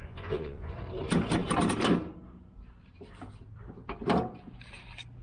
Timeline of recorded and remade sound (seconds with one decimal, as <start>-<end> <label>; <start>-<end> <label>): 0.0-0.7 remade; 0.7-5.2 recorded